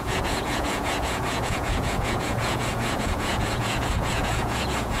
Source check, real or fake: fake